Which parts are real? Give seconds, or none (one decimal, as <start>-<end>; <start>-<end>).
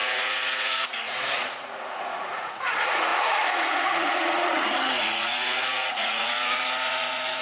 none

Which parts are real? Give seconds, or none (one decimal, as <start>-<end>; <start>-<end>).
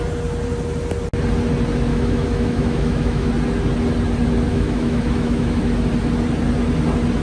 0.0-1.9; 3.3-4.5; 5.6-7.2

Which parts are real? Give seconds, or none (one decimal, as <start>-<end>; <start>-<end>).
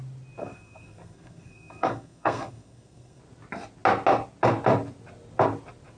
0.0-0.4; 3.2-6.0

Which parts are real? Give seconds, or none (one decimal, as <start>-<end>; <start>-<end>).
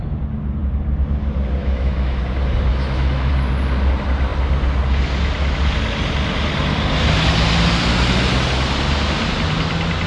0.0-1.6; 2.2-2.7; 3.3-10.1